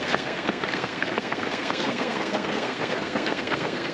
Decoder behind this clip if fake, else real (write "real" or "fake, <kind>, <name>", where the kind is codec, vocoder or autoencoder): fake, codec, SNAC